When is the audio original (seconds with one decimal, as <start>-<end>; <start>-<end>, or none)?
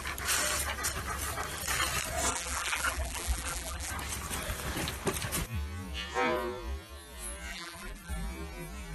0.0-2.3; 3.9-7.5; 8.1-8.9